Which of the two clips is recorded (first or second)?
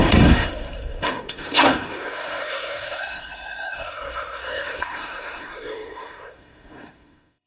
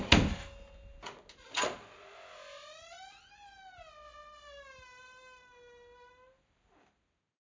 second